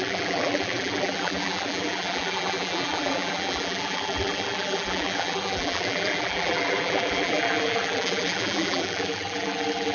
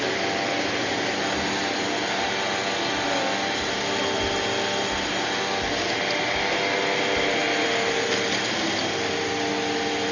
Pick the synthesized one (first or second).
first